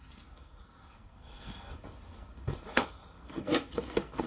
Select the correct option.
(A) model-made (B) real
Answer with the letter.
A